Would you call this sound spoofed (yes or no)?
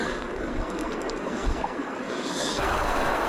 yes